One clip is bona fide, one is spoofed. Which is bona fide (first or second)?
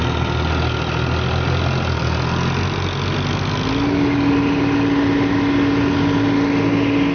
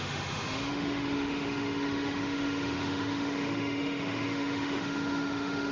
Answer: first